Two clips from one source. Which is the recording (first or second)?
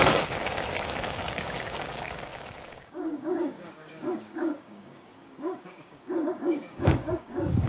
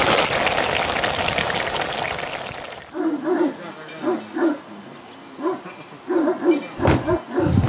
second